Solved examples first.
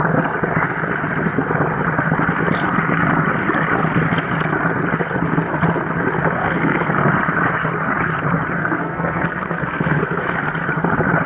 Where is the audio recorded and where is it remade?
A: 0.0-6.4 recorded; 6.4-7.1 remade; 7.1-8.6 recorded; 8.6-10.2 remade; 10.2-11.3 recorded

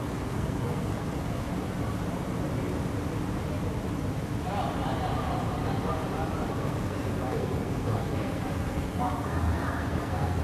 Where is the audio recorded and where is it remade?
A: 0.0-1.5 remade; 1.5-6.5 recorded; 6.5-10.4 remade

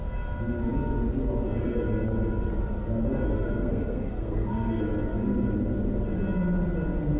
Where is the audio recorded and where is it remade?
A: 0.0-3.3 recorded; 3.3-4.8 remade; 4.8-7.2 recorded

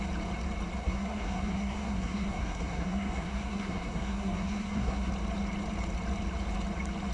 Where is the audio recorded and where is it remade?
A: 0.0-0.8 recorded; 0.8-5.1 remade; 5.1-7.1 recorded

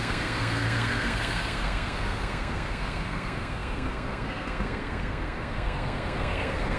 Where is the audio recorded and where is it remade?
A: 0.0-6.8 remade

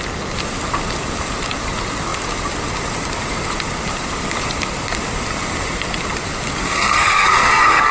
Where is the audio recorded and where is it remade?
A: 0.0-6.6 recorded; 6.6-7.9 remade

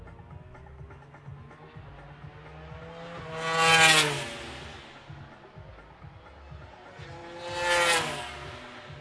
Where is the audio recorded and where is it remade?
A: 0.0-9.0 recorded